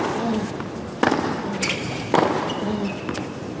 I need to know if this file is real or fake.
real